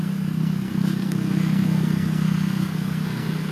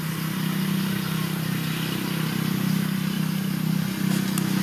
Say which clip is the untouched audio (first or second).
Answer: second